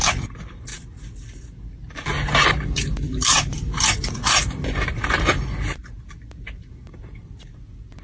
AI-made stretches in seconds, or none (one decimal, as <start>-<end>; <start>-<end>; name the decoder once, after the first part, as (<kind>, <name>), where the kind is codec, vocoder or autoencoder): 0.0-0.7 (vocoder, BigVGAN v2); 2.5-8.0